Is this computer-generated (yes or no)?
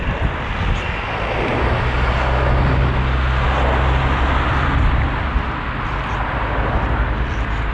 no